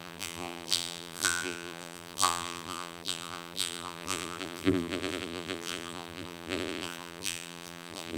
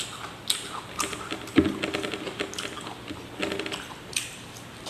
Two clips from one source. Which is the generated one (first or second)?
first